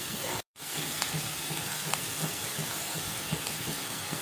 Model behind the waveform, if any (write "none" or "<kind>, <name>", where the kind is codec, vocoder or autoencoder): codec, SNAC